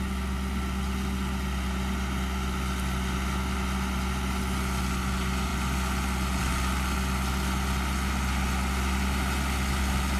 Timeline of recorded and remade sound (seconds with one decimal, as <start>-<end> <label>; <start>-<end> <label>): 0.0-10.2 recorded